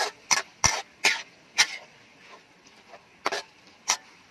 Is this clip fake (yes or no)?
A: no